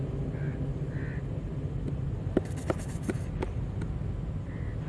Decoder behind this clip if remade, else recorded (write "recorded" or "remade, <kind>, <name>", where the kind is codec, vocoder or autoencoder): recorded